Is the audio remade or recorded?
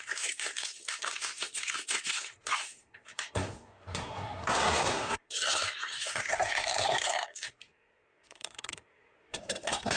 remade